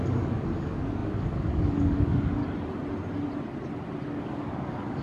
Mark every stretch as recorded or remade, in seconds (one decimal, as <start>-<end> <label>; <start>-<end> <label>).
0.0-2.4 remade; 2.4-4.2 recorded; 4.2-5.0 remade